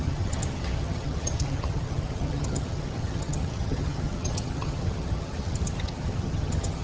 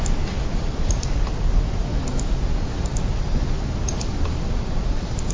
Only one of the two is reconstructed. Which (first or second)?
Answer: first